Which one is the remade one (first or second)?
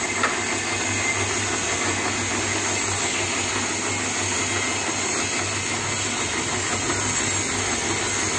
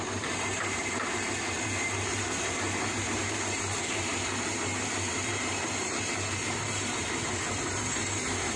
second